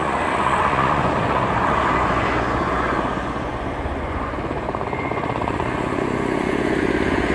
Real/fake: fake